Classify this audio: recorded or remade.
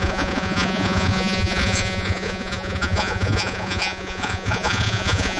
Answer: remade